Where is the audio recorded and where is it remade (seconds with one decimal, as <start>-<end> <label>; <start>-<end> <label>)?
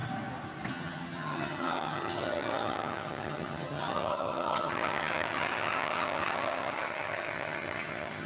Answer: 0.0-0.7 recorded; 0.7-8.3 remade